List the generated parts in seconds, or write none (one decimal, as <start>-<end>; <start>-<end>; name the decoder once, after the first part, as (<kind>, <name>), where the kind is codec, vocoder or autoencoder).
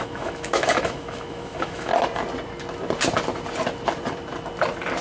0.0-1.9 (autoencoder, DAC-VAE)